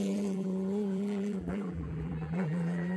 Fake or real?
fake